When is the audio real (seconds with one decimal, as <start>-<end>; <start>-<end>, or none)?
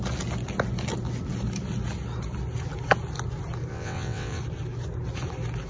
0.0-3.7; 4.4-5.7